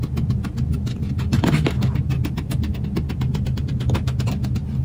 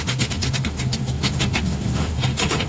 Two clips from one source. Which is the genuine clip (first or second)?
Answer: first